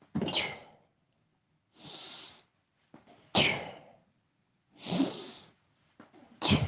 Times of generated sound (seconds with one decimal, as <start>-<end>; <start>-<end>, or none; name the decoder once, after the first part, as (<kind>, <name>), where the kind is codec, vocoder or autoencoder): 4.1-5.3 (vocoder, Vocos)